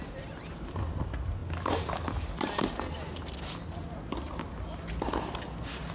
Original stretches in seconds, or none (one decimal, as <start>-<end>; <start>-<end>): 0.0-5.9

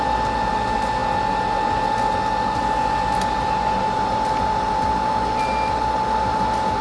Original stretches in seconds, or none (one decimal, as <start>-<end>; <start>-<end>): 0.0-6.8

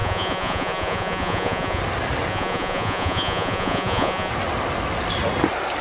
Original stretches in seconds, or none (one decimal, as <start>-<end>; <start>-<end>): 1.8-2.3; 4.3-5.8